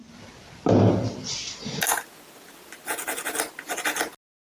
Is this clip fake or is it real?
real